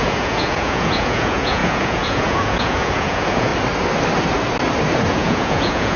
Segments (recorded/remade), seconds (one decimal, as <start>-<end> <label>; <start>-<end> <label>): 0.0-3.5 remade; 3.5-5.1 recorded; 5.1-6.0 remade